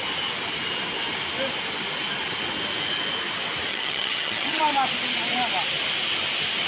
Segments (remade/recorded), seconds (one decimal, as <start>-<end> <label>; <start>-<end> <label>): 0.0-3.7 recorded; 3.7-4.6 remade; 4.6-6.7 recorded